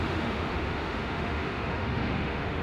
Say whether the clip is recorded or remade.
remade